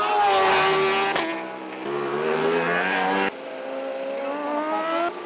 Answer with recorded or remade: recorded